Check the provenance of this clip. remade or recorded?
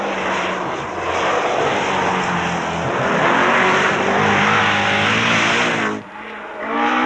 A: recorded